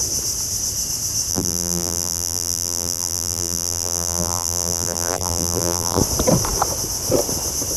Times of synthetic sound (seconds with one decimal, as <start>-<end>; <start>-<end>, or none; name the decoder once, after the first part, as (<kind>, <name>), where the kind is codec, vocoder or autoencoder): 1.3-6.0 (vocoder, BigVGAN v2)